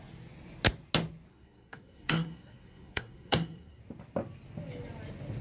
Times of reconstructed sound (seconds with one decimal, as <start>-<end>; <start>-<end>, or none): 1.3-3.8